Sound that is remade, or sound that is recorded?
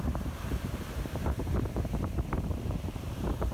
remade